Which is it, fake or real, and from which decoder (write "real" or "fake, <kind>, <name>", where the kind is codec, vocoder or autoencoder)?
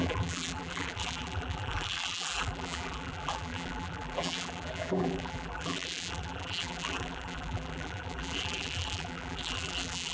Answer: fake, vocoder, BigVGAN v2